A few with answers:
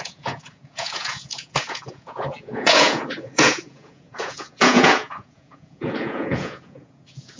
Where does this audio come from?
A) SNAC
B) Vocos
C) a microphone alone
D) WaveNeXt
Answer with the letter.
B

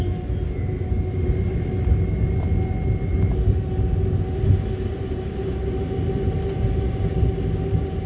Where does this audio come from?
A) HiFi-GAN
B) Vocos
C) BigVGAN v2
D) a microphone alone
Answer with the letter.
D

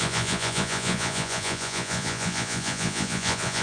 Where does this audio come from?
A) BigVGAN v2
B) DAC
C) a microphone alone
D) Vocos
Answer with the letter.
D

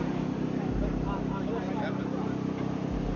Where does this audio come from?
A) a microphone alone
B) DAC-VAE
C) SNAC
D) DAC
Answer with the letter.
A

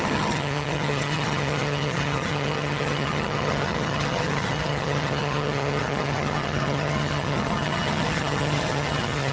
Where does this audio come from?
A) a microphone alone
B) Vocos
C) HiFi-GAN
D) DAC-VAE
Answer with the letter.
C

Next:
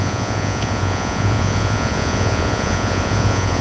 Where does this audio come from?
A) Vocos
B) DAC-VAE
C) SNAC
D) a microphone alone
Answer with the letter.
A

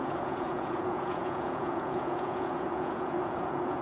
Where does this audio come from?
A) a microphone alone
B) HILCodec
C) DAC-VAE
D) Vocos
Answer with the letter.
D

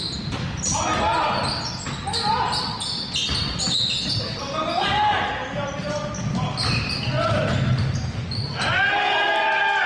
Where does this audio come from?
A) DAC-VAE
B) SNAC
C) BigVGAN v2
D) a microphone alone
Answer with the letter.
D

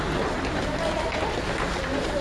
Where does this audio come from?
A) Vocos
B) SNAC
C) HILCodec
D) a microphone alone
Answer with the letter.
D